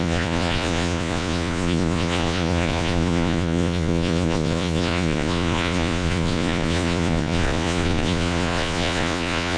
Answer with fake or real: fake